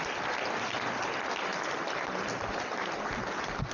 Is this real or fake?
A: real